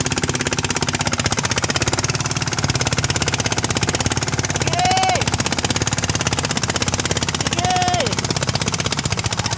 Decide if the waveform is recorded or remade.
recorded